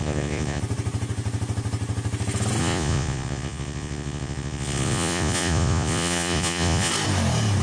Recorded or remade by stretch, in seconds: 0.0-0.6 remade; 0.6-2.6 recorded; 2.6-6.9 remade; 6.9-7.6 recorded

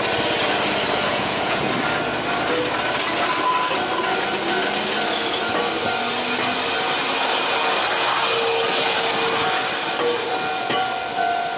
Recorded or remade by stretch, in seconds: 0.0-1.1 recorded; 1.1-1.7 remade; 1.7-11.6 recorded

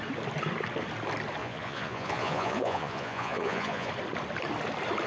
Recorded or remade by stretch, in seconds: 0.0-1.4 recorded; 1.4-3.9 remade; 3.9-5.1 recorded

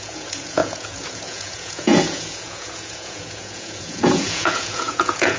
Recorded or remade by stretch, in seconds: 0.0-5.4 remade